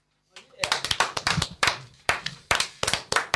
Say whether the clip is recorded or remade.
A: remade